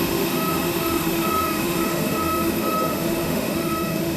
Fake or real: fake